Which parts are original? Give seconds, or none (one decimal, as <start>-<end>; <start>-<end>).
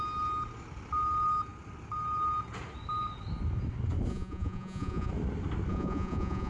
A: 0.0-4.1; 5.1-5.7